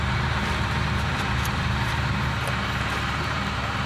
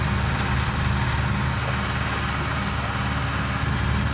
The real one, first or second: second